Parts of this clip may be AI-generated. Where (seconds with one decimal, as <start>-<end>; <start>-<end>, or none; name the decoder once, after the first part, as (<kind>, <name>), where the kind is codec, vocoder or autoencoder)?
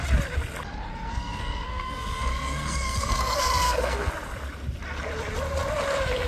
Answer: 0.9-4.1 (codec, SNAC)